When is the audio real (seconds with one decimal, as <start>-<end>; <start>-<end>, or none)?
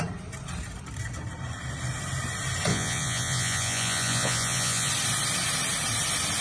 0.0-2.7; 4.9-6.4